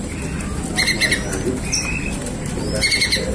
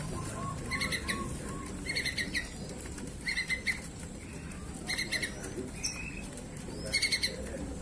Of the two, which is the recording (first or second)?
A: first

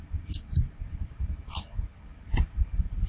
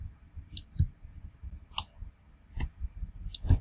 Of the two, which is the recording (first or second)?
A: second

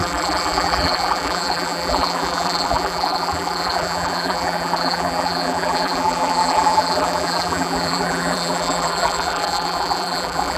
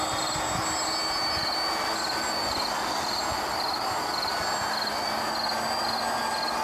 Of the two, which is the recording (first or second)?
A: second